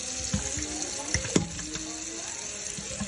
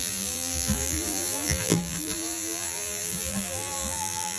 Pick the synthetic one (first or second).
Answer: second